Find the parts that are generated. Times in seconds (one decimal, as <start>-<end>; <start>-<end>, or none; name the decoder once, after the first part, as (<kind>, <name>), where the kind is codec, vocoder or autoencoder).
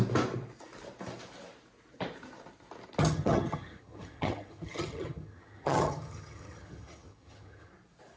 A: 3.0-7.7 (vocoder, HiFi-GAN)